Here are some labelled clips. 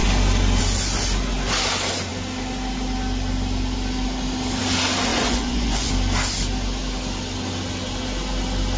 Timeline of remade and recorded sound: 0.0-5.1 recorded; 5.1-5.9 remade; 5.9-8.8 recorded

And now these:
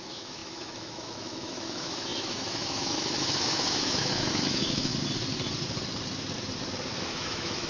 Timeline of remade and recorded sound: 0.0-4.9 remade; 4.9-7.0 recorded; 7.0-7.7 remade

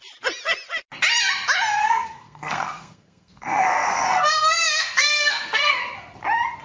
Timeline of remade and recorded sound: 0.0-1.8 recorded; 1.8-5.8 remade; 5.8-6.6 recorded

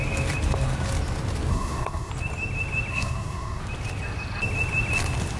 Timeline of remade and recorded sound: 0.0-1.5 recorded; 1.5-2.1 remade; 2.1-2.9 recorded; 2.9-3.6 remade; 3.6-5.4 recorded

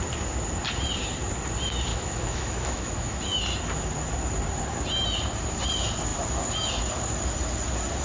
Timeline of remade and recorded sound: 0.0-1.9 recorded; 1.9-3.2 remade; 3.2-8.0 recorded

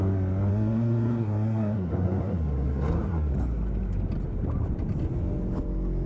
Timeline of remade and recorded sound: 0.0-0.5 recorded; 0.5-3.3 remade; 3.3-6.1 recorded